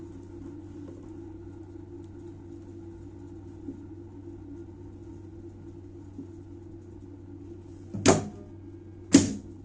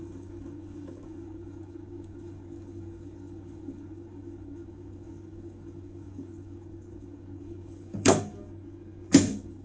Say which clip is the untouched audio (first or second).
first